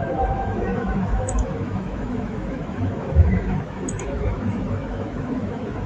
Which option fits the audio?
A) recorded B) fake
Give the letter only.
B